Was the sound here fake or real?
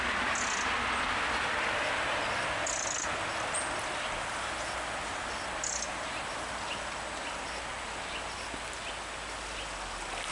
real